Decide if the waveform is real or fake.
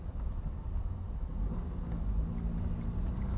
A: real